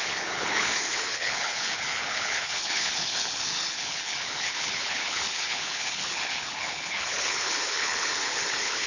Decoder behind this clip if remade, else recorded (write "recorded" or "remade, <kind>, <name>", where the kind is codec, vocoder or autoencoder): remade, codec, HILCodec